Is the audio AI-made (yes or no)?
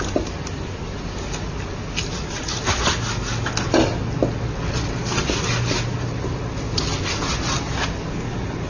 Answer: no